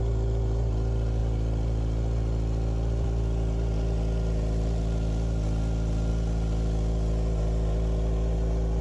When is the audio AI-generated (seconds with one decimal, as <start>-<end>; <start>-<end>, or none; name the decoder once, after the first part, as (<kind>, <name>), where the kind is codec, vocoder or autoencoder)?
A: none